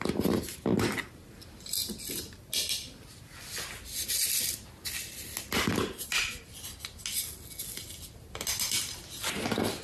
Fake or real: real